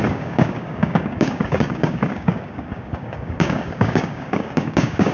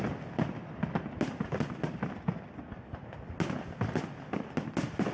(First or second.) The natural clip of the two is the second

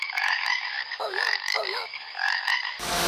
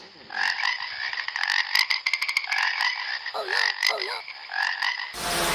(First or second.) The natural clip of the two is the second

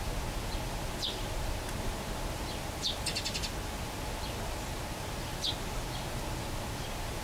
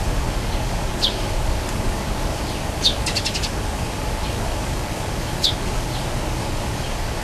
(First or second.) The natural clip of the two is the first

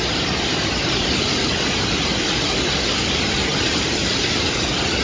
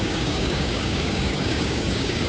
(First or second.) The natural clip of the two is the first